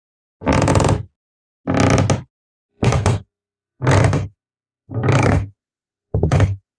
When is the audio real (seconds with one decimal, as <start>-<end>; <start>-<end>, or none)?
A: 0.0-2.7